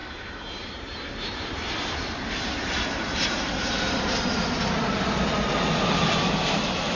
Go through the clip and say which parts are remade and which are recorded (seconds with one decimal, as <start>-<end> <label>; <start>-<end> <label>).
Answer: 0.0-4.2 remade; 4.2-7.0 recorded